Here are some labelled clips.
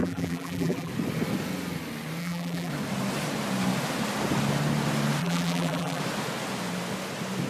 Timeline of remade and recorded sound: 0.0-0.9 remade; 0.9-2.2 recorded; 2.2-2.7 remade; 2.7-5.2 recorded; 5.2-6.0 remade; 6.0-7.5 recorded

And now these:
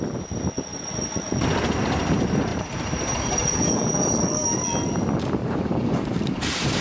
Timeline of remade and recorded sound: 0.0-2.5 recorded; 2.5-3.3 remade; 3.3-5.4 recorded; 5.4-6.8 remade

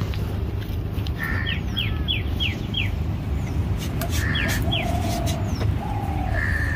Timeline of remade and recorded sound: 0.0-2.5 recorded; 2.5-3.1 remade; 3.1-6.8 recorded

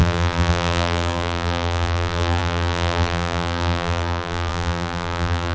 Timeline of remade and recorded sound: 0.0-5.5 remade

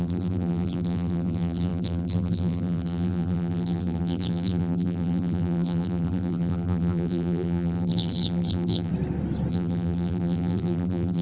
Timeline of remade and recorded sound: 0.0-8.9 remade; 8.9-9.5 recorded; 9.5-11.2 remade

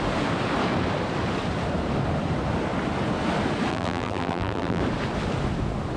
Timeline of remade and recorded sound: 0.0-3.7 recorded; 3.7-4.8 remade; 4.8-6.0 recorded

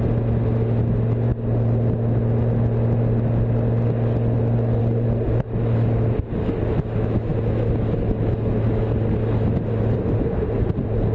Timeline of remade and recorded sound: 0.0-11.1 recorded